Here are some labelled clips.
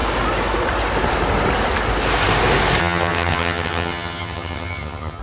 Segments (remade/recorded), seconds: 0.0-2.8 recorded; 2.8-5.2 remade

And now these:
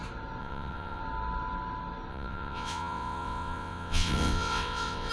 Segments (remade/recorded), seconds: 0.0-0.4 recorded; 0.4-1.0 remade; 1.0-2.1 recorded; 2.1-5.1 remade